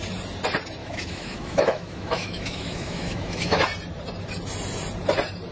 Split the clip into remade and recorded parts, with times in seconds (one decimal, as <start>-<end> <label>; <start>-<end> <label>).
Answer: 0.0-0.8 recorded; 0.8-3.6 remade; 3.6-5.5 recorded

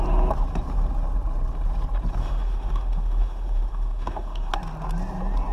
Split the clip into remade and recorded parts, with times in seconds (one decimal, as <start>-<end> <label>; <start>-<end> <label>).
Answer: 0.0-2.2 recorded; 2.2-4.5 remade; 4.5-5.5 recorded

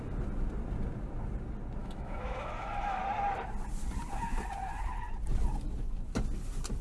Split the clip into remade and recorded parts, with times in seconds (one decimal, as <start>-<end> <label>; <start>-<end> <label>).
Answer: 0.0-1.8 recorded; 1.8-3.0 remade; 3.0-6.8 recorded

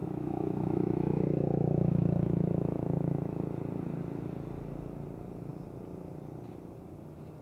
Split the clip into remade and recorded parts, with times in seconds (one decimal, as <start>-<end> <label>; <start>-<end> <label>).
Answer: 0.0-3.4 remade; 3.4-7.4 recorded

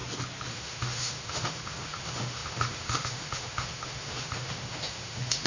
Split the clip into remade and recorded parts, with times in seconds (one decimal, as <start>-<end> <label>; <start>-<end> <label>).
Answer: 0.0-0.5 recorded; 0.5-5.5 remade